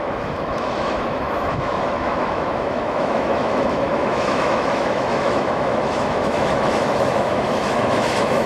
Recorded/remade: remade